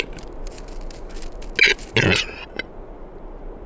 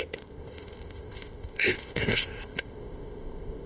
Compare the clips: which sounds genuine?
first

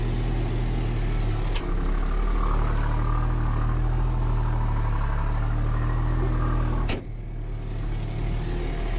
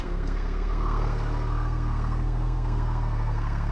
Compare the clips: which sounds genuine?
first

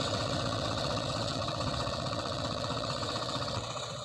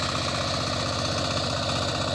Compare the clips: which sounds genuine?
second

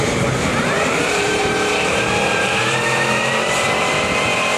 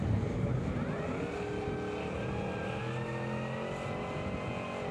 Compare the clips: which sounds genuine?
second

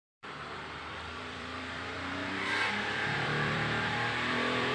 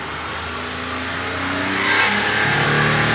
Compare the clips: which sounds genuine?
second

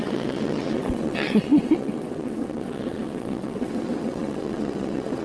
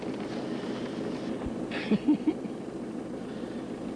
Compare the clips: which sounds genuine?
second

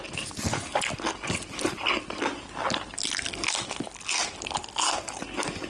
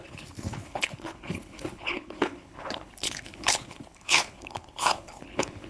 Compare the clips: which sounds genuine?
first